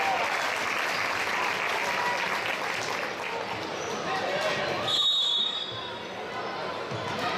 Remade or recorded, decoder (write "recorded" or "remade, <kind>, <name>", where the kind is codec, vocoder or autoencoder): recorded